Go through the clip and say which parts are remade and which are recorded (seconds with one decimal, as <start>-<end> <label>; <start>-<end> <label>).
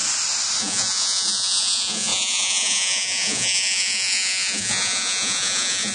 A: 0.0-0.6 recorded; 0.6-5.9 remade